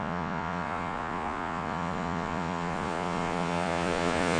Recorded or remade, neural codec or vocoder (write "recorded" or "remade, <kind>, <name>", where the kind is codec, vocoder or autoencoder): remade, vocoder, Vocos